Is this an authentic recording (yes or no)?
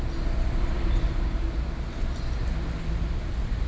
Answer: yes